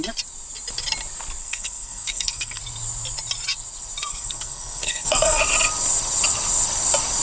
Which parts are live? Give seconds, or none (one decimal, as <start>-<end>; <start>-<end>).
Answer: 0.0-1.4; 2.6-4.1; 5.4-7.2